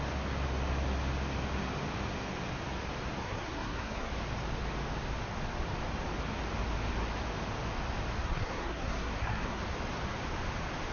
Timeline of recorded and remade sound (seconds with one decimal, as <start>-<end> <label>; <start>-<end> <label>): 0.0-3.2 recorded; 3.2-4.1 remade; 4.1-8.2 recorded; 8.2-9.6 remade; 9.6-10.9 recorded